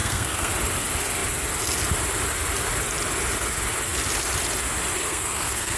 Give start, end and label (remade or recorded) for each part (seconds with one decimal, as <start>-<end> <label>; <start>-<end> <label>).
0.0-0.5 remade; 0.5-5.1 recorded; 5.1-5.8 remade